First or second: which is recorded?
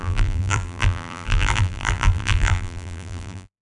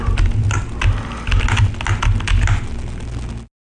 second